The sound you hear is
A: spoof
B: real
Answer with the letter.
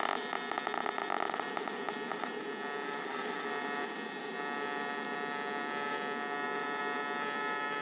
B